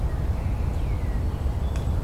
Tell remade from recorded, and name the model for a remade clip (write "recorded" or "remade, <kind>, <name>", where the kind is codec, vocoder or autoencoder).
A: recorded